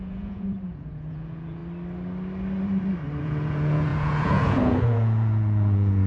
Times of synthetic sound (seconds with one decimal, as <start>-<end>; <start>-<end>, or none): 0.0-1.6; 3.2-6.1